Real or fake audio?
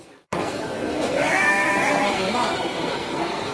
fake